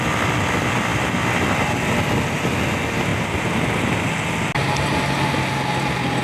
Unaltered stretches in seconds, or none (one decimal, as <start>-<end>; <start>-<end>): 0.0-6.2